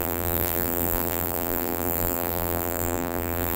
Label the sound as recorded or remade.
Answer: remade